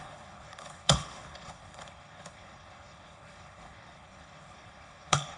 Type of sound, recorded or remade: remade